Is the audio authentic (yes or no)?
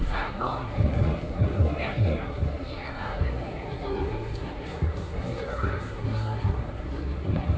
no